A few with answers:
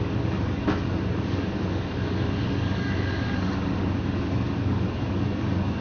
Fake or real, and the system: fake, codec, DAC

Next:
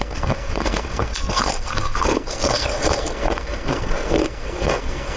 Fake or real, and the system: fake, codec, SNAC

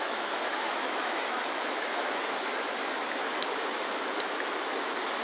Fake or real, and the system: fake, autoencoder, DAC-VAE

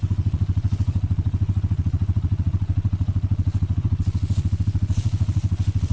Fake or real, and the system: fake, vocoder, Vocos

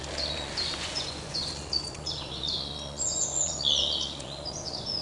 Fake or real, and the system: fake, vocoder, Vocos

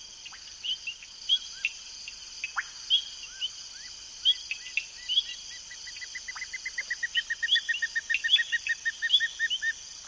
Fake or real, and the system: real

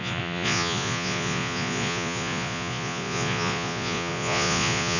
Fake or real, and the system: fake, vocoder, Vocos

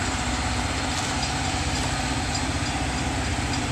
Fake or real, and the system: real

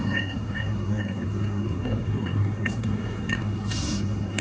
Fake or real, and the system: fake, codec, SNAC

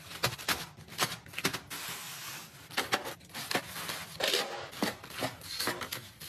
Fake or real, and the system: real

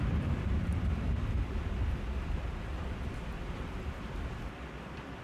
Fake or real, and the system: fake, vocoder, BigVGAN v2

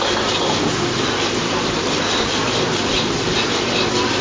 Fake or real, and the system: fake, vocoder, BigVGAN v2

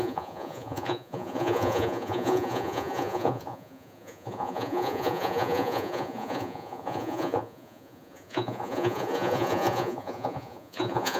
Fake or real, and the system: fake, vocoder, Vocos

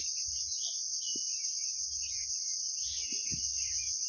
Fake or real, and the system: real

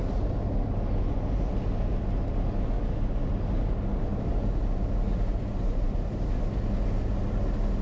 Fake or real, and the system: real